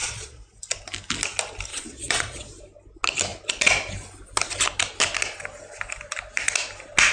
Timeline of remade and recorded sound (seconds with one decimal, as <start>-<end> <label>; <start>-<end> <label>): 0.0-0.6 remade; 0.6-1.7 recorded; 1.7-2.5 remade; 2.5-7.1 recorded